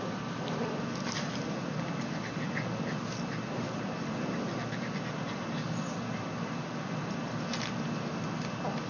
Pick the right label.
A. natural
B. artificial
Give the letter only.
A